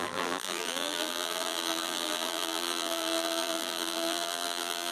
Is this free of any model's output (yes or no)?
no